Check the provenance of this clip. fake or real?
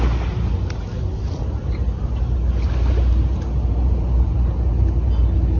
real